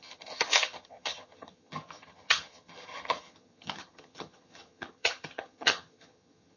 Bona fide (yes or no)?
no